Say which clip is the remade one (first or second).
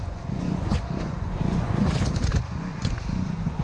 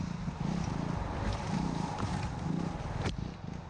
first